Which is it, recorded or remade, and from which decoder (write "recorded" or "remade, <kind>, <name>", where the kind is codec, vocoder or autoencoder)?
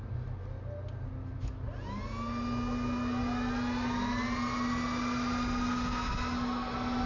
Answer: recorded